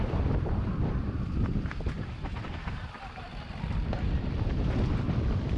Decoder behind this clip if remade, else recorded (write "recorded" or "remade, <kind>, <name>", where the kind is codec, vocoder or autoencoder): remade, vocoder, BigVGAN v2